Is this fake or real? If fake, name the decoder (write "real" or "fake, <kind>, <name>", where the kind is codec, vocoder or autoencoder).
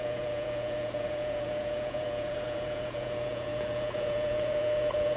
fake, vocoder, Vocos